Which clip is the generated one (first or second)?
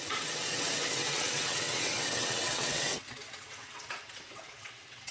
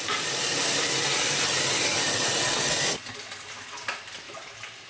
first